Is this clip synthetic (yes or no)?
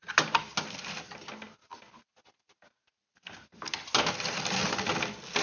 no